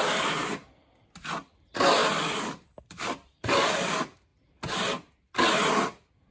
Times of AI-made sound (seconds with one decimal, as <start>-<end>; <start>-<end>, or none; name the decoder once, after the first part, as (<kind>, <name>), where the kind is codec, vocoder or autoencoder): 2.0-3.9 (vocoder, BigVGAN v2)